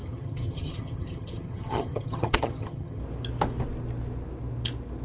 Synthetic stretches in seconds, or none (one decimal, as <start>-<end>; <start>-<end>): 0.0-3.0

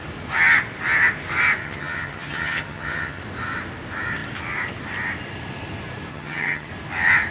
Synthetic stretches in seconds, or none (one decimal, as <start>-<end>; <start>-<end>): 1.6-3.2; 6.1-6.7

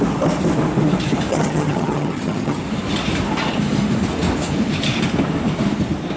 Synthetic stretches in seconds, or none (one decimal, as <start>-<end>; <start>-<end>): 1.3-2.6